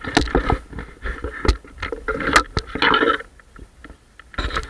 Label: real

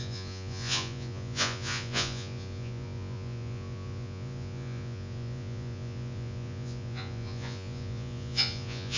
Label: fake